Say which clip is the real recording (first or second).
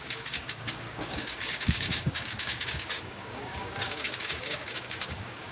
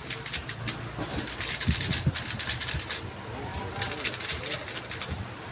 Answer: second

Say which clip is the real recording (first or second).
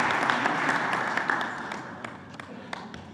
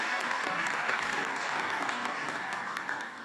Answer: first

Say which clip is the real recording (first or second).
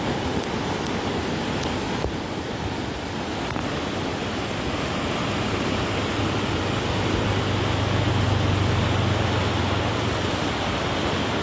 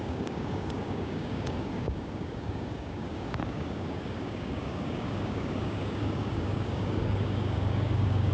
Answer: first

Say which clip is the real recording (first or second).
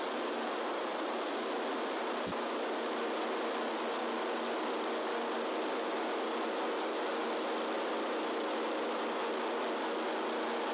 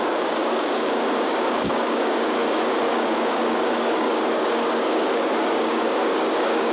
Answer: first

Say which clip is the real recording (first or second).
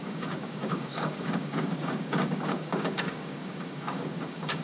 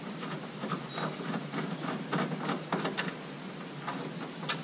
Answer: second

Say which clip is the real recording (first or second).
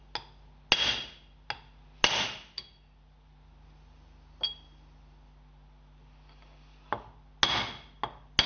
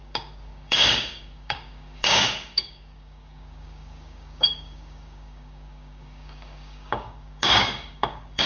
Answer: first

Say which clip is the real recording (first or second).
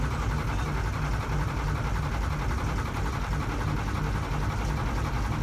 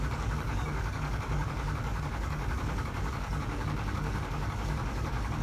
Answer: first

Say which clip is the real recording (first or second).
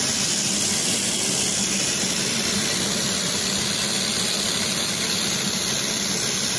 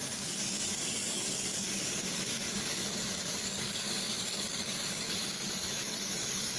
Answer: first